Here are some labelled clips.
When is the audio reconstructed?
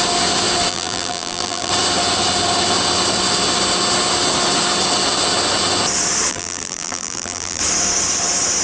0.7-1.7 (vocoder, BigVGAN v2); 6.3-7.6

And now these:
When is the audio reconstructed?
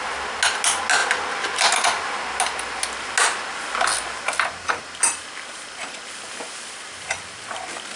none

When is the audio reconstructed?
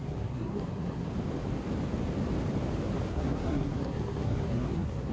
0.0-1.1 (codec, SNAC); 3.1-5.1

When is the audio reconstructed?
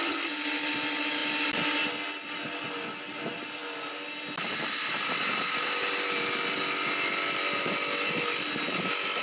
none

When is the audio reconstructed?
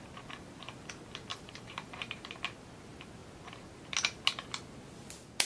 1.3-2.3 (vocoder, BigVGAN v2)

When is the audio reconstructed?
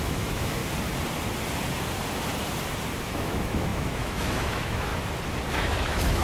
0.0-0.6 (autoencoder, DAC-VAE); 3.0-4.9; 5.5-6.2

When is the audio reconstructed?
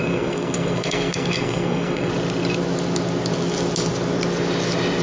0.0-2.1 (codec, SNAC)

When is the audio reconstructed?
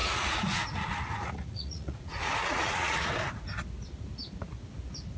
0.0-3.1 (vocoder, Vocos)